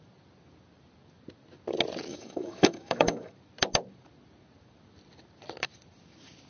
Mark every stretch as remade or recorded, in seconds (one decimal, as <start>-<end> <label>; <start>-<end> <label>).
0.0-2.1 recorded; 2.1-3.3 remade; 3.3-6.5 recorded